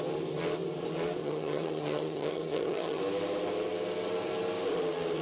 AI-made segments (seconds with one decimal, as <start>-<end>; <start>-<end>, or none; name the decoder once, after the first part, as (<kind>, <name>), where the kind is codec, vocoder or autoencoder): 1.2-3.0 (vocoder, HiFi-GAN)